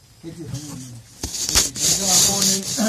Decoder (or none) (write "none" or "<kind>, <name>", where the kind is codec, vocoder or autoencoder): none